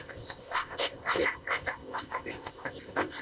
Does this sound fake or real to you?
fake